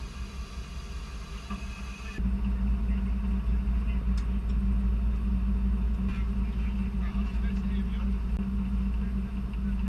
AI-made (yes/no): no